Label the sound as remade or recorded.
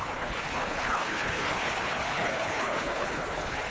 remade